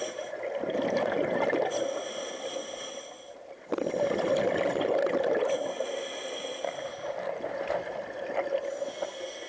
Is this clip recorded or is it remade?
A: recorded